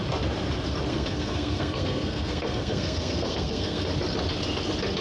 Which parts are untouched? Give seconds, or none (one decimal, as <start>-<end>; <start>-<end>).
0.0-0.9; 3.9-5.0